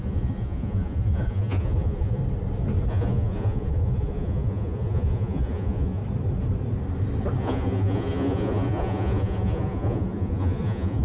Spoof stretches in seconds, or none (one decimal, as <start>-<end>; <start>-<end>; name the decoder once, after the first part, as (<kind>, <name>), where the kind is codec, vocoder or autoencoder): 0.0-2.2 (vocoder, Vocos); 2.9-6.0; 7.4-11.0